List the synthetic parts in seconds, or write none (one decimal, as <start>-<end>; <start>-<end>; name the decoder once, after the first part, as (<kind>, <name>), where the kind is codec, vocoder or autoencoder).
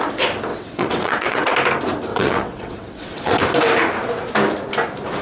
0.5-1.5 (vocoder, WaveNeXt); 2.1-3.4